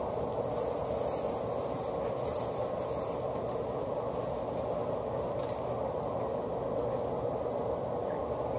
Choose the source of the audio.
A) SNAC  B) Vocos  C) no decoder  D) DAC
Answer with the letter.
C